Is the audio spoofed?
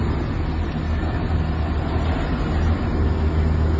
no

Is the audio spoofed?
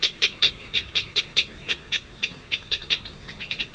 yes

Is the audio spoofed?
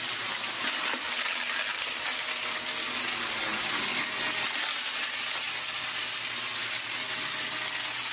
no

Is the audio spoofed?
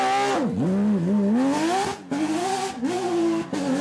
no